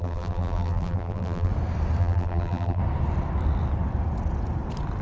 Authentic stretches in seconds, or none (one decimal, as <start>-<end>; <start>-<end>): 1.5-2.0; 2.8-5.0